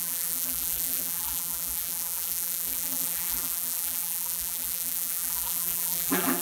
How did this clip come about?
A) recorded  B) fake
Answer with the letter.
B